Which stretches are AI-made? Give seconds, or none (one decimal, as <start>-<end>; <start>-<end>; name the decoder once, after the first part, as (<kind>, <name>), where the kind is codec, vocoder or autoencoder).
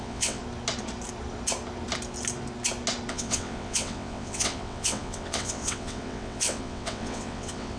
0.0-0.4 (vocoder, WaveNeXt); 3.1-7.8